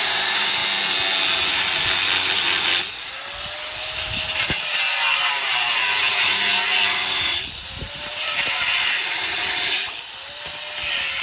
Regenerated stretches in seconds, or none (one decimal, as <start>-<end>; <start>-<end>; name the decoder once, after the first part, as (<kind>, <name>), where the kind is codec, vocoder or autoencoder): 0.0-0.6 (vocoder, BigVGAN v2); 4.4-10.5